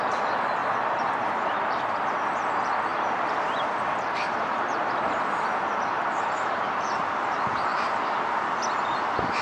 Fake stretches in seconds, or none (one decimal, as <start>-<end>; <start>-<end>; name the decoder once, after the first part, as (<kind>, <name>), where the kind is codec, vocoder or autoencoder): 2.9-7.2 (vocoder, BigVGAN v2)